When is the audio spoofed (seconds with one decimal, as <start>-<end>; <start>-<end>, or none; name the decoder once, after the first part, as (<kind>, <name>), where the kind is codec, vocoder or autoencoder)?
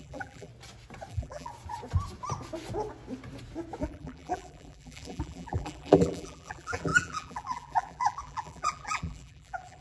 0.0-0.5 (vocoder, BigVGAN v2); 1.1-1.5; 3.8-9.8